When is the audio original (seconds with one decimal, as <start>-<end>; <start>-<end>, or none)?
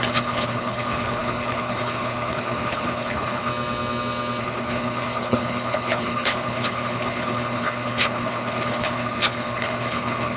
3.5-4.4